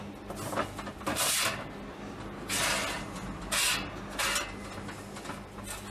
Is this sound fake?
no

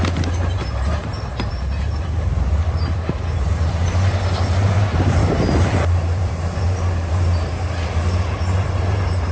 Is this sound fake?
yes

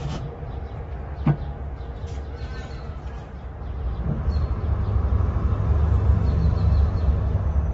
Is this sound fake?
no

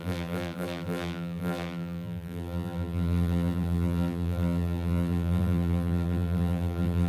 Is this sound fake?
yes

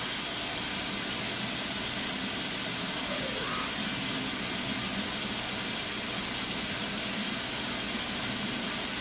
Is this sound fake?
no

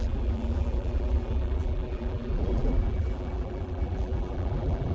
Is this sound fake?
yes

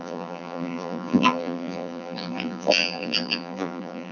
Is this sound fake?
yes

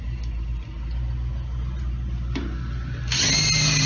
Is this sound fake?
no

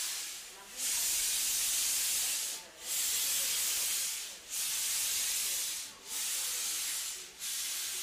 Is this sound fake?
no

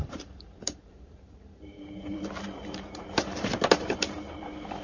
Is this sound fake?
yes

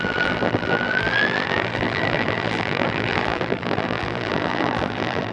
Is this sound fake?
yes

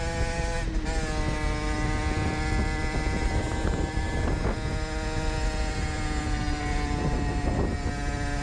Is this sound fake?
no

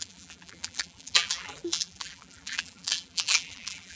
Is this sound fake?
yes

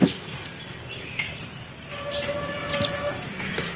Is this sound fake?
no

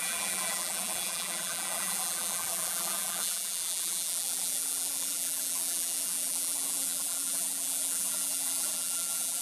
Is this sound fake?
yes